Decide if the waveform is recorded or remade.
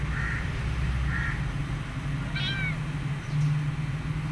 recorded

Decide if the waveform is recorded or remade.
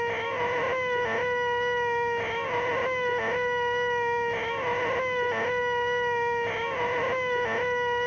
recorded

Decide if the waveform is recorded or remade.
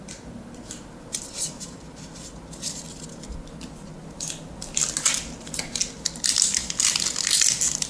recorded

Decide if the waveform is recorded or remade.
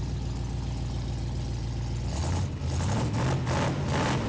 recorded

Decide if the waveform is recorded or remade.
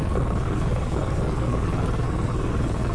remade